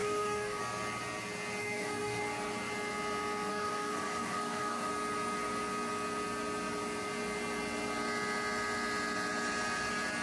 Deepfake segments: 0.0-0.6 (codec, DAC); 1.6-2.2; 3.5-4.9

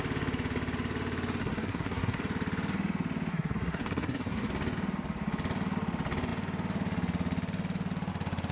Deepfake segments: 1.4-2.2 (codec, SNAC); 3.3-4.5

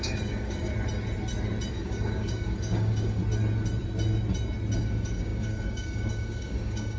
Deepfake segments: 0.0-0.7 (codec, DAC); 1.7-3.2; 4.8-7.0

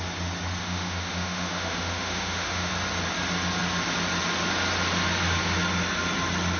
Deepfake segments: 0.6-2.7 (autoencoder, DAC-VAE)

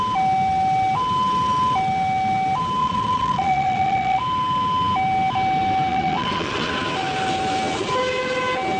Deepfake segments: 2.8-4.2 (vocoder, Vocos); 5.9-6.7

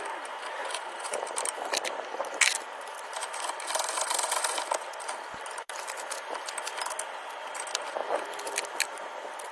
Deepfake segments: 0.6-1.2 (vocoder, Vocos)

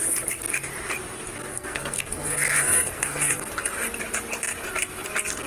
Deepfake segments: 1.5-3.5 (codec, SNAC)